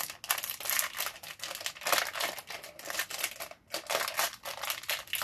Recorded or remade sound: recorded